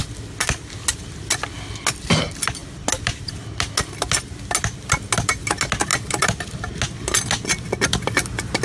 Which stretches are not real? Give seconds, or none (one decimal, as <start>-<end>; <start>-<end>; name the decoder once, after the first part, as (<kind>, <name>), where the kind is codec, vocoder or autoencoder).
none